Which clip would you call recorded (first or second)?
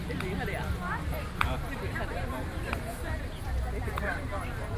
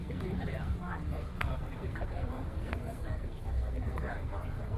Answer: first